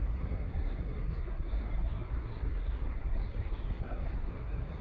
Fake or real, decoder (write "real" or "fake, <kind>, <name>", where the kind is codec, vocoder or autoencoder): fake, codec, SNAC